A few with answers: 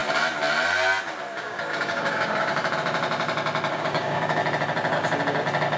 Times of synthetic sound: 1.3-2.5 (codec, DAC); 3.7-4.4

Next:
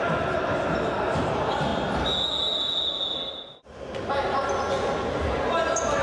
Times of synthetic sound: none

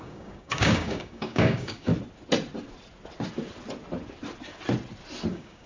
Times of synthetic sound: 0.0-1.9 (codec, DAC); 5.3-5.7

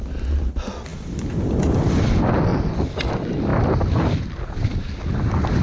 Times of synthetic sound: none